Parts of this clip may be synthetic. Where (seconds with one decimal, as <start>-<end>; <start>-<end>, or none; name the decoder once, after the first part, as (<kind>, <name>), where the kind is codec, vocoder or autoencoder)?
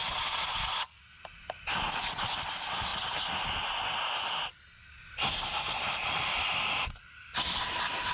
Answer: none